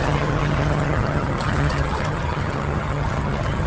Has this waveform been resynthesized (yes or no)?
yes